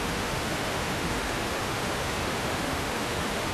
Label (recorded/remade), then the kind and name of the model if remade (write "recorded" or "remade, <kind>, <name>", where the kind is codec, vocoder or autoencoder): remade, autoencoder, DAC-VAE